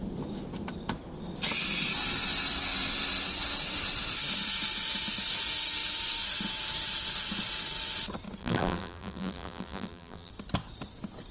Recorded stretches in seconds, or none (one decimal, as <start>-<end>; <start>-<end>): 0.0-8.4; 10.3-11.3